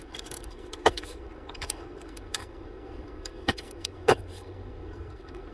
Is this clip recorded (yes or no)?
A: no